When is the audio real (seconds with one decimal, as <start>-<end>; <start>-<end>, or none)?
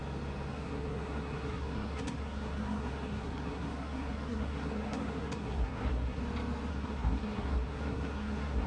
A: 0.0-0.5; 6.2-6.7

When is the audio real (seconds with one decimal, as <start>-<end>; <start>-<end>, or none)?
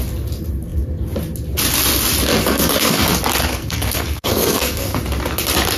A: 0.0-2.4; 3.1-3.5; 5.0-5.8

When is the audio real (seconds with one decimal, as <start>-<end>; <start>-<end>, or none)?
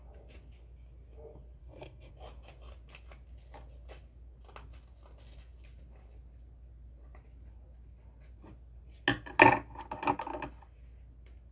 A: 0.0-1.6; 2.1-11.5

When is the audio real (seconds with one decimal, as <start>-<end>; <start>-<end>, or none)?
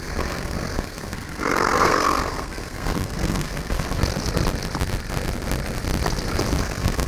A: 4.0-6.6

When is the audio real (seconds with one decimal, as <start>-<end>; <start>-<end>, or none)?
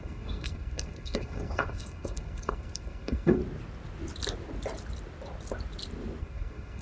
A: 3.4-6.2